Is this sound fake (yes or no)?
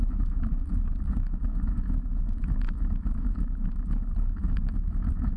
yes